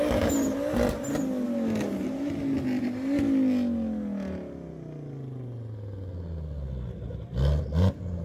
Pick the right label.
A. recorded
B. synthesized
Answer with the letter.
A